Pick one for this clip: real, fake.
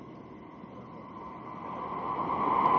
real